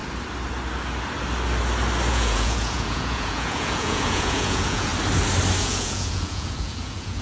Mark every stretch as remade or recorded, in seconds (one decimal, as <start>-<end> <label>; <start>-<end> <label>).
0.0-2.1 recorded; 2.1-4.9 remade; 4.9-5.6 recorded; 5.6-7.2 remade